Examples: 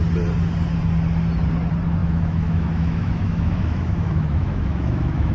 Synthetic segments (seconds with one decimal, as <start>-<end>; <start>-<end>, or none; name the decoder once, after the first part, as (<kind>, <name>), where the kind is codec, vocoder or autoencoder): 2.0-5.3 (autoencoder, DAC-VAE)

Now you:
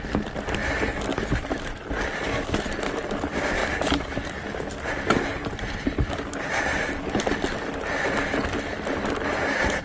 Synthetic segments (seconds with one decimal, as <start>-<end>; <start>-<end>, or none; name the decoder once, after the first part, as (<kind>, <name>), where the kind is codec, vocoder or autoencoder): 1.1-2.0 (vocoder, BigVGAN v2); 3.6-4.3; 5.3-6.5

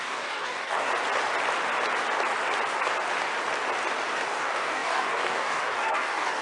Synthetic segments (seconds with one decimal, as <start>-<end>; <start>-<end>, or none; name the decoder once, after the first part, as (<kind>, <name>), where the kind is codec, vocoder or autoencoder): 0.0-0.9 (codec, DAC); 4.1-6.4

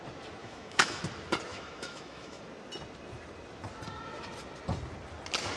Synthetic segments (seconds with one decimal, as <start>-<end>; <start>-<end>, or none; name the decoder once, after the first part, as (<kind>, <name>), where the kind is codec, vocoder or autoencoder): 0.4-1.0 (autoencoder, DAC-VAE); 1.5-2.4

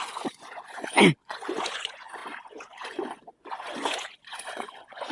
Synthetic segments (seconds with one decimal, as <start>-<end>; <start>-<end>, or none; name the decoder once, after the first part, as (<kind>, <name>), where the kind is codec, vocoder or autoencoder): 0.0-5.1 (vocoder, Vocos)

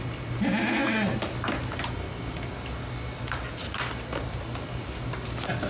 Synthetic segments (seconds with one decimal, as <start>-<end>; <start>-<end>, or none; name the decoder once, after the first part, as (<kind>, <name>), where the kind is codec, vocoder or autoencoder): none